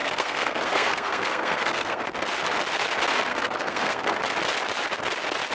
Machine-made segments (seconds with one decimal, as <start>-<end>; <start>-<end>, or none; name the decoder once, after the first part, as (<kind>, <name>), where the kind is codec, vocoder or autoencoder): 0.0-2.0 (codec, SNAC); 3.3-4.2